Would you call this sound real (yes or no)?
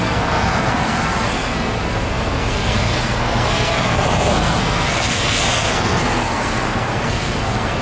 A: no